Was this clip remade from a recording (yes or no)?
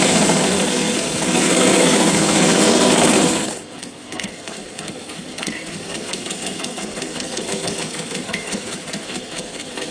yes